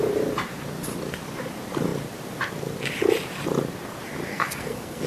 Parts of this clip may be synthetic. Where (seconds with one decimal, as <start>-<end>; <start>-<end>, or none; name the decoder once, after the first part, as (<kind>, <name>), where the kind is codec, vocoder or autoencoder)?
4.3-5.1 (codec, SNAC)